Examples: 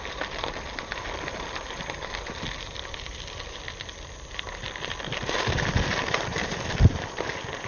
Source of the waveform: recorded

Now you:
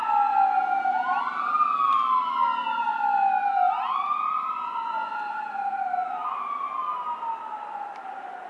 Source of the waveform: recorded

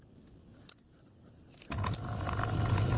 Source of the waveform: recorded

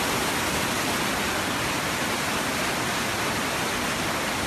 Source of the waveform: recorded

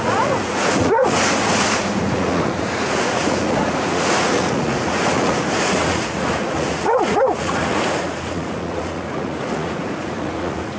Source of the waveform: remade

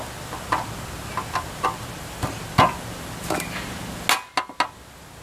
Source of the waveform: recorded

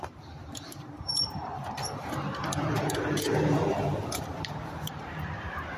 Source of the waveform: remade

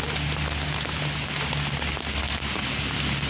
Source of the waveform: recorded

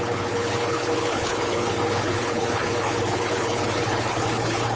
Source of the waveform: remade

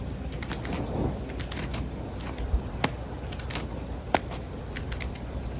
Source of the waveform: recorded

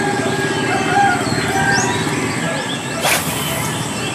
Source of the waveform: recorded